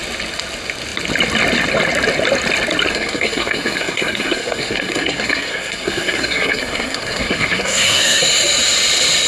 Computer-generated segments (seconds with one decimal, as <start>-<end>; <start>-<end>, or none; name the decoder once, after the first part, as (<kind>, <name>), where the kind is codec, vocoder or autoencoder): 2.9-8.2 (codec, SNAC)